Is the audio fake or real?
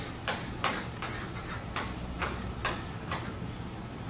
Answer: fake